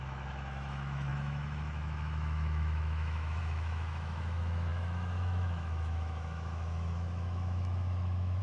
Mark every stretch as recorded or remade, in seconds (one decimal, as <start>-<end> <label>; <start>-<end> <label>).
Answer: 0.0-8.4 remade

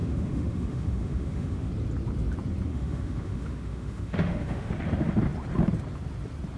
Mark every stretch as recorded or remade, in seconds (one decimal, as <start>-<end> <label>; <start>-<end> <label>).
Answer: 0.0-1.7 remade; 1.7-2.7 recorded; 2.7-4.7 remade; 4.7-6.6 recorded

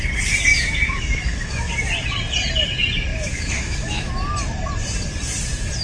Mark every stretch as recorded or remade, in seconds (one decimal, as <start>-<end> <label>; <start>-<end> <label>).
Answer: 0.0-0.5 recorded; 0.5-1.7 remade; 1.7-3.1 recorded; 3.1-4.1 remade; 4.1-5.8 recorded

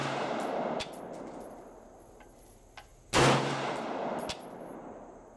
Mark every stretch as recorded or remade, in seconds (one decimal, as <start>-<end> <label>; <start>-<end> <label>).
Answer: 0.0-5.4 recorded

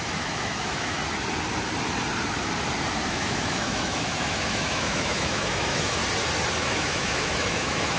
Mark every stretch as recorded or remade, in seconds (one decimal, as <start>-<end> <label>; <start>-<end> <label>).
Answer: 0.0-1.0 remade; 1.0-3.1 recorded; 3.1-6.0 remade; 6.0-6.6 recorded; 6.6-8.0 remade

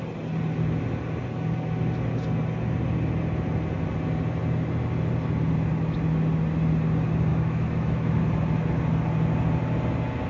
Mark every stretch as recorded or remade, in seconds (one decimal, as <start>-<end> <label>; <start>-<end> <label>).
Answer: 0.0-7.3 recorded; 7.3-8.2 remade; 8.2-10.3 recorded